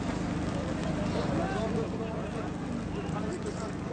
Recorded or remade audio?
recorded